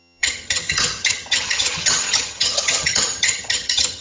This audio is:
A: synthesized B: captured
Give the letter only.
A